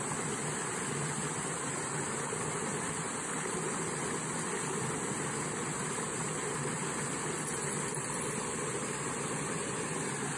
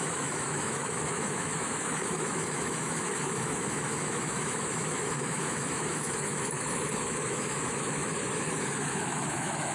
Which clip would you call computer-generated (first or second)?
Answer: second